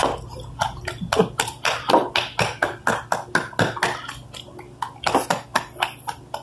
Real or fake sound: real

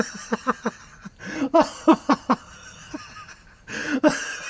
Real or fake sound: real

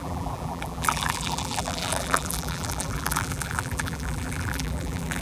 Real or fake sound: fake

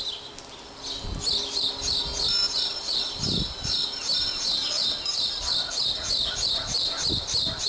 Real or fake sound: real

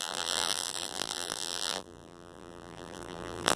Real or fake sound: fake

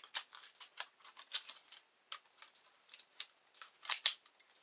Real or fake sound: real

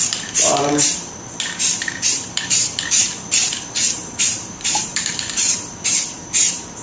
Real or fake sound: fake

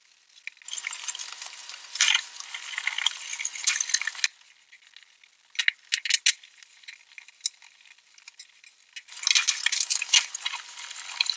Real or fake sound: real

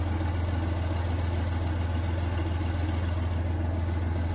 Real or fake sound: real